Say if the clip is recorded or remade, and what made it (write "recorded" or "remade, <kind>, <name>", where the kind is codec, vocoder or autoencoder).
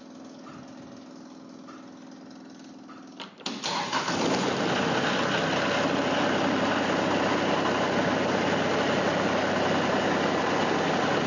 recorded